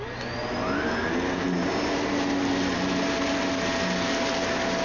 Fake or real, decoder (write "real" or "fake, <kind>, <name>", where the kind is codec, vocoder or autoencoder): real